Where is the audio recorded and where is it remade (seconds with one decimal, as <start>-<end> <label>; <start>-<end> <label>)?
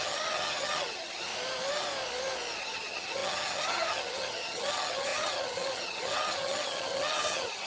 0.0-1.3 remade; 1.3-2.6 recorded; 2.6-7.7 remade